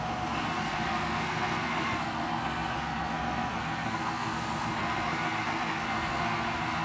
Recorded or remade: remade